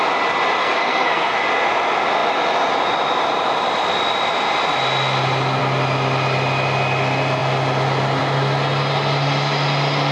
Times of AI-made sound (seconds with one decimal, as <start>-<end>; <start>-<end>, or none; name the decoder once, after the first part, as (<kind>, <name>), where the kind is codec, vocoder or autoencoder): 0.6-1.4 (codec, SNAC)